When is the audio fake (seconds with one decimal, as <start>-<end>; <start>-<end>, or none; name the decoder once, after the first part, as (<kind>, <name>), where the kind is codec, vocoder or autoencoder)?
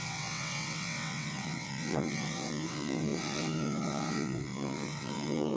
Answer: 0.0-5.6 (vocoder, WaveNeXt)